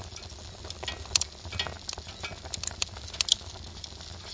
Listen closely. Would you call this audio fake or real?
real